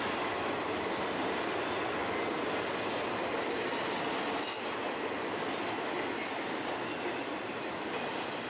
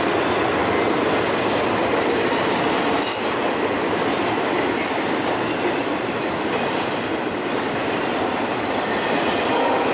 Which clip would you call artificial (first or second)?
second